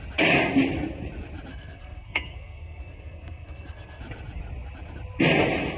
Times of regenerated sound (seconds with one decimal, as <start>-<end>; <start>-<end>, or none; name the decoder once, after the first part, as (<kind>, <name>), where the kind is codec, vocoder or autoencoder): 1.5-4.0 (codec, SNAC)

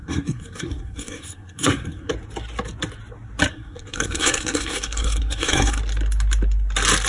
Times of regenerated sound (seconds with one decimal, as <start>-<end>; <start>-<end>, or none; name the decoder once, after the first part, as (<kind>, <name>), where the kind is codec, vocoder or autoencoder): 0.0-2.1 (codec, SNAC); 3.5-5.8

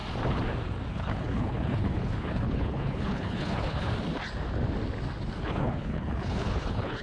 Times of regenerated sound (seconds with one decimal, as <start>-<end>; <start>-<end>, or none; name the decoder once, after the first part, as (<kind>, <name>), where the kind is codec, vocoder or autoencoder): 0.9-3.9 (codec, HILCodec); 5.4-7.0

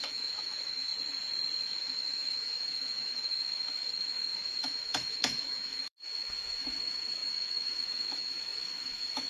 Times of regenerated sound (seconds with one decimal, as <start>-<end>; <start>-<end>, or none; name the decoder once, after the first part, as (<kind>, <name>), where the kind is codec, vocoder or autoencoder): 0.0-0.9 (autoencoder, DAC-VAE); 1.6-9.3